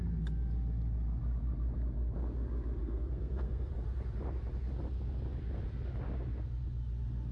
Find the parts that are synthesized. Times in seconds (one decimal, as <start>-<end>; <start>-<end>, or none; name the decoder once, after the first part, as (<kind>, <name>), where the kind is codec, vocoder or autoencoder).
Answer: 2.8-3.7 (codec, SNAC)